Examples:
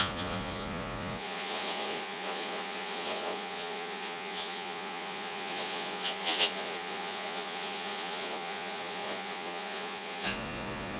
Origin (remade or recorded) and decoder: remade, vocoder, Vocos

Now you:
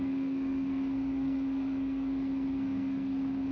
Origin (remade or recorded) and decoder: remade, codec, SNAC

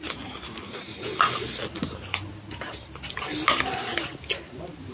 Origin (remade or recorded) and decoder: recorded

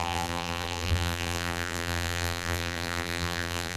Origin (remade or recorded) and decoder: remade, vocoder, BigVGAN v2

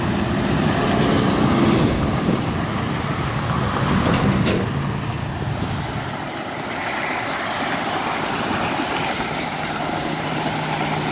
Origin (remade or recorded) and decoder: recorded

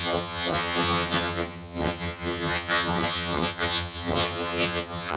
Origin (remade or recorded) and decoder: remade, vocoder, HiFi-GAN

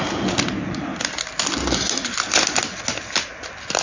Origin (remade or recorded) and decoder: recorded